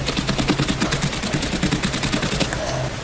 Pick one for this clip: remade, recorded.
recorded